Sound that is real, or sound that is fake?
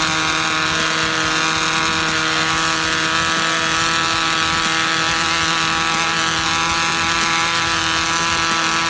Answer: real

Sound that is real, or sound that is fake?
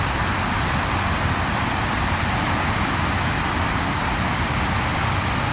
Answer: real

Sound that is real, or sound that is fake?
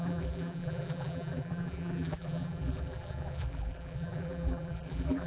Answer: fake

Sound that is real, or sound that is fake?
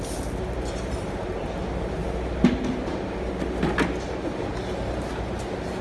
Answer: real